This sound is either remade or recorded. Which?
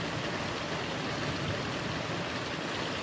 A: recorded